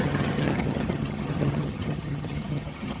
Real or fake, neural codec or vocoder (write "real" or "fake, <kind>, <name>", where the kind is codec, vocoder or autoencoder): fake, vocoder, HiFi-GAN